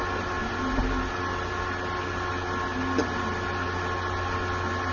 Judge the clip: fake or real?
real